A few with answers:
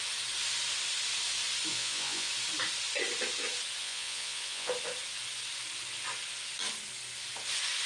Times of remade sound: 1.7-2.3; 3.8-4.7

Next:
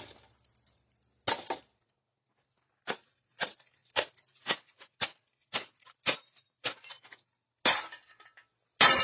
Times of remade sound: none

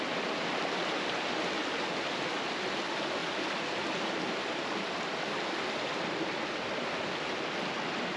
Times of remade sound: none

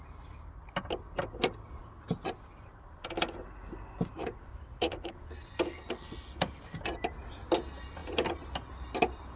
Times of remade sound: 4.5-5.1

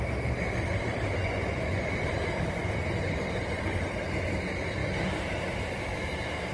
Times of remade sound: 1.2-1.9

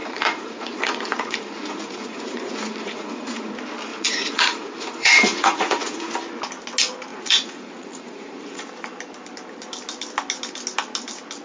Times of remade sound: 0.0-3.5; 3.9-6.1; 7.1-8.6